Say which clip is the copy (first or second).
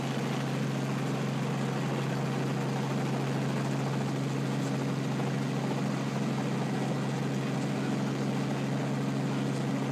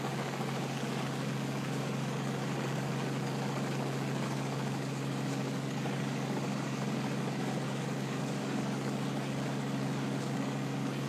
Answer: second